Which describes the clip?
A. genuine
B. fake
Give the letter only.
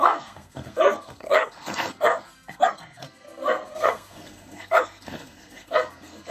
B